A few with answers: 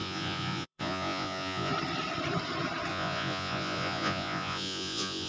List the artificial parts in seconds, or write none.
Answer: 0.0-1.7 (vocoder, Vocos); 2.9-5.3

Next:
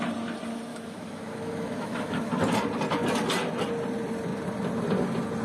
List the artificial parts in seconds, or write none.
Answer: 0.7-2.3 (autoencoder, DAC-VAE)